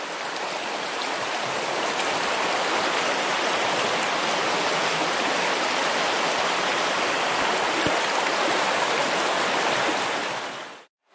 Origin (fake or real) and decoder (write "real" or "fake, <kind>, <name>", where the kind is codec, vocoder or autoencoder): real